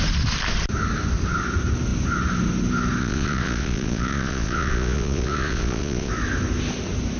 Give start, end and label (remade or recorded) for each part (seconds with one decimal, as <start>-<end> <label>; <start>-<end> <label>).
0.0-3.0 recorded; 3.0-6.1 remade; 6.1-7.2 recorded